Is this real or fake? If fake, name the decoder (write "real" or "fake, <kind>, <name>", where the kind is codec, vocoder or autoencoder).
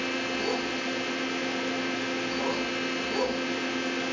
real